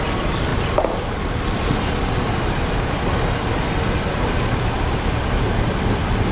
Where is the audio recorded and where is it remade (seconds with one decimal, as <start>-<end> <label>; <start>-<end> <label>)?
0.0-6.3 recorded